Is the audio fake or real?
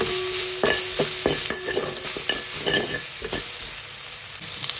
real